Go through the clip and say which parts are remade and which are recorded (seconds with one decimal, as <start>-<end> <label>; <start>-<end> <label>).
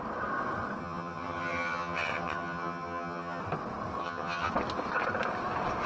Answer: 0.0-0.8 recorded; 0.8-3.4 remade; 3.4-4.0 recorded; 4.0-4.5 remade; 4.5-5.9 recorded